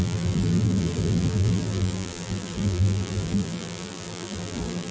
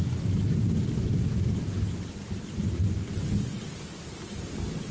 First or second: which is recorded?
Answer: second